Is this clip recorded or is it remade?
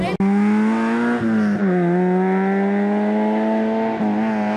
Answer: recorded